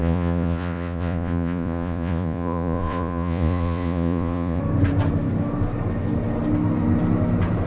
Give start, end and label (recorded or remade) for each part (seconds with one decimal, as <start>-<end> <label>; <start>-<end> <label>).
0.0-4.6 remade; 4.6-7.7 recorded